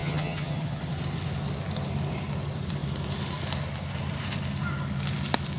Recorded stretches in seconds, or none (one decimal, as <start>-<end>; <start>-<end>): 0.8-5.6